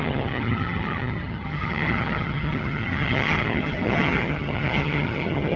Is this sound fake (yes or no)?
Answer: yes